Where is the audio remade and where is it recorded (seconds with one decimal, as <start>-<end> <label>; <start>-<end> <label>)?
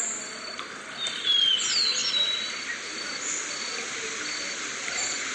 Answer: 0.0-5.3 recorded